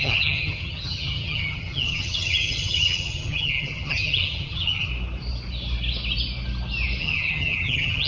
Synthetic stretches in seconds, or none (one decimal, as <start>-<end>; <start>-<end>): 0.0-4.9; 7.0-8.1